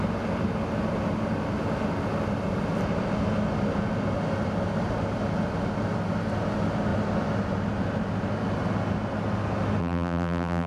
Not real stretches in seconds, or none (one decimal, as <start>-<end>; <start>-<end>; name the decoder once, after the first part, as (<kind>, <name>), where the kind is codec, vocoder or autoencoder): 9.8-10.7 (vocoder, BigVGAN v2)